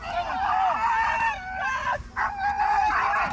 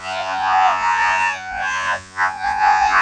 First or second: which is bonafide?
first